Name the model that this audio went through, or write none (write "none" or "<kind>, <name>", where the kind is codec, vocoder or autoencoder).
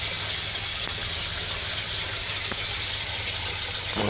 none